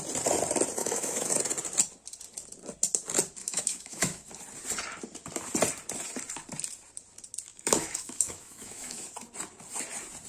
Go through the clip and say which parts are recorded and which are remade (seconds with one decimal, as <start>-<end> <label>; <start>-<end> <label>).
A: 0.0-0.8 recorded; 0.8-1.3 remade; 1.3-3.4 recorded; 3.4-4.3 remade; 4.3-7.5 recorded; 7.5-9.0 remade; 9.0-10.3 recorded